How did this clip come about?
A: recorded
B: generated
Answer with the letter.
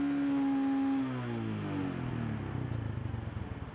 A